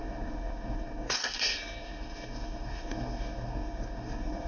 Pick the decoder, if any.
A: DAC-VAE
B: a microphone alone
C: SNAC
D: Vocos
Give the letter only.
C